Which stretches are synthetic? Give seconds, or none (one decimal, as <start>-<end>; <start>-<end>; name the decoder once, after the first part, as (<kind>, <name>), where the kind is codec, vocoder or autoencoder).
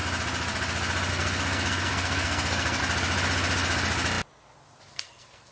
1.1-2.8 (codec, SNAC); 4.9-5.5